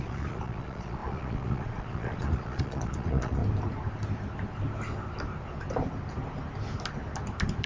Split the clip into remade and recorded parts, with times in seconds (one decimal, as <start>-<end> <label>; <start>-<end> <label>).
0.0-3.4 remade; 3.4-7.7 recorded